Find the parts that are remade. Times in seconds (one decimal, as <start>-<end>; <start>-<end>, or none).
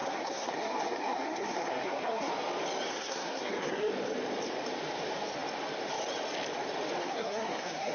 0.0-2.3; 2.9-3.9; 7.0-7.9